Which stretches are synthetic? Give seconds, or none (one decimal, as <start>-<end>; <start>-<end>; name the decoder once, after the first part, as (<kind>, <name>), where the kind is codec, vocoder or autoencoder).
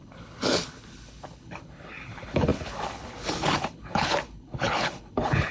0.0-5.5 (codec, HILCodec)